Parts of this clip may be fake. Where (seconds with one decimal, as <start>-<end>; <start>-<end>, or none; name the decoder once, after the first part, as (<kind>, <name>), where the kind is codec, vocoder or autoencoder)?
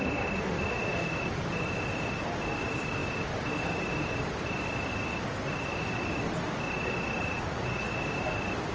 7.2-7.9 (vocoder, Vocos)